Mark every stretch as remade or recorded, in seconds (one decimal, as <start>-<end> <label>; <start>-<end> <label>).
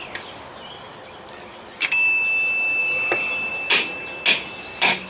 0.0-0.9 recorded; 0.9-2.2 remade; 2.2-2.8 recorded; 2.8-3.5 remade; 3.5-5.1 recorded